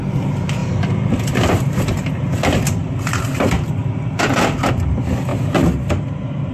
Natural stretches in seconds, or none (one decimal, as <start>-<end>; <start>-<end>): 0.0-0.6; 3.2-3.8; 4.7-6.5